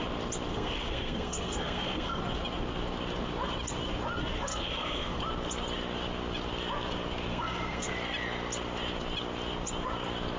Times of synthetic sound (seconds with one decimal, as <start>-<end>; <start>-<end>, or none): 0.5-2.2; 4.5-5.2; 7.3-7.9